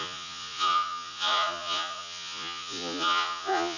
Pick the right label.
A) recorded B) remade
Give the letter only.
B